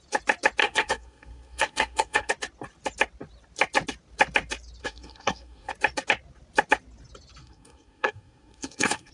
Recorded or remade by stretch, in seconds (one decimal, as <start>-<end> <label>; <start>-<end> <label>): 0.0-0.6 recorded; 0.6-2.3 remade; 2.3-4.8 recorded; 4.8-5.7 remade; 5.7-7.4 recorded; 7.4-9.1 remade